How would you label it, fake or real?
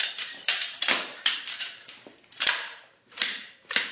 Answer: fake